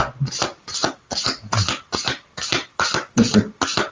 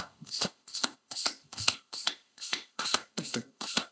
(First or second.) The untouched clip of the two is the first